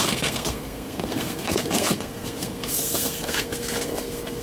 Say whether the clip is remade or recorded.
remade